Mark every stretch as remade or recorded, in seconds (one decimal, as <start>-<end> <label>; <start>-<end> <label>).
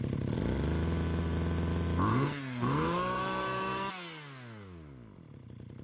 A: 0.0-2.1 recorded; 2.1-3.9 remade; 3.9-5.8 recorded